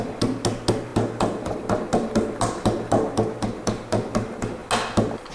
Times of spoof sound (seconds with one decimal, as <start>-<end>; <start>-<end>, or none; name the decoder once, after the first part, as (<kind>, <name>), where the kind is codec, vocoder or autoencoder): none